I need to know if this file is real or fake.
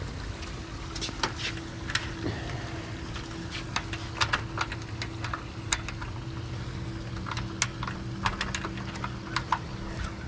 real